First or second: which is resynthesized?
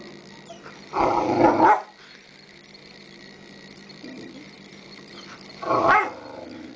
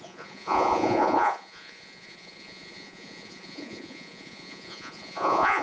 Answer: second